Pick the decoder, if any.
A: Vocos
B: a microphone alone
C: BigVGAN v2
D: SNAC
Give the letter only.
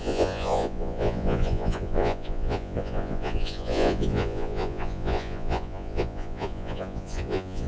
A